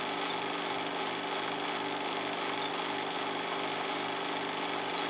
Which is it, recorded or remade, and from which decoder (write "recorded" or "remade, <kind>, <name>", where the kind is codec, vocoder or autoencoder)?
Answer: recorded